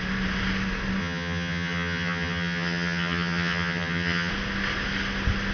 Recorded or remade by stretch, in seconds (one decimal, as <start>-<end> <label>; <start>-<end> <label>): 0.0-1.0 recorded; 1.0-4.3 remade; 4.3-5.5 recorded